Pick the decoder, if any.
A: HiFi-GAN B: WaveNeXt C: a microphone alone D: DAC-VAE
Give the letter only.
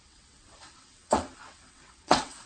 B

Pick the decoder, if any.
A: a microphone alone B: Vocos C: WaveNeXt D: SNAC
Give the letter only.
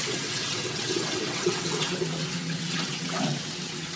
C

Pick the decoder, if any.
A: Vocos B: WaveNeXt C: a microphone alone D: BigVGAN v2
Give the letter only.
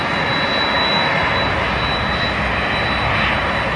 C